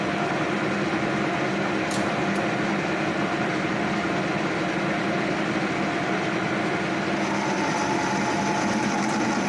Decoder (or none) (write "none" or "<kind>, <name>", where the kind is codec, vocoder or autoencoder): none